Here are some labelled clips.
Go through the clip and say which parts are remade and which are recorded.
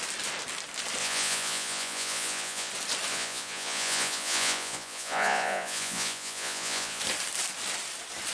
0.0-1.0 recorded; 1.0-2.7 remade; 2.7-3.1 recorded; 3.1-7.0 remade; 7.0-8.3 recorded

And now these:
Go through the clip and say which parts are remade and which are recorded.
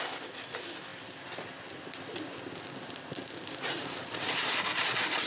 0.0-5.3 recorded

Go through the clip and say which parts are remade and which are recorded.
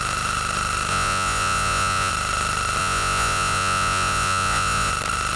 0.0-0.9 recorded; 0.9-2.1 remade; 2.1-2.8 recorded; 2.8-4.9 remade; 4.9-5.4 recorded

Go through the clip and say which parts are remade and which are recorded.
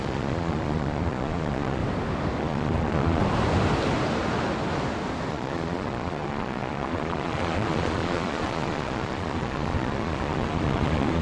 0.0-1.8 remade; 1.8-2.4 recorded; 2.4-3.2 remade; 3.2-5.3 recorded; 5.3-11.2 remade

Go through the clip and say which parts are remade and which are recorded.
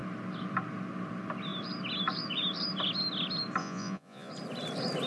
0.0-3.6 recorded; 3.6-4.3 remade; 4.3-5.1 recorded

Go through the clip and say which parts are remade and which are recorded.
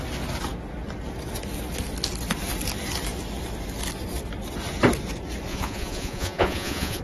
0.0-5.5 recorded; 5.5-7.0 remade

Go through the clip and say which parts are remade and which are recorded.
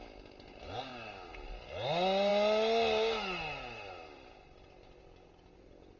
0.0-6.0 recorded